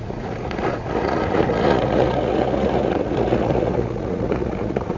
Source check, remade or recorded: remade